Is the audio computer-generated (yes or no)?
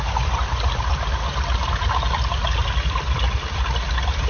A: no